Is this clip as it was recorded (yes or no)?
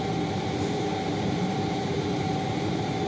no